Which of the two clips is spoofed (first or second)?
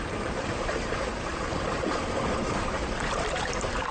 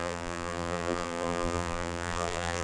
second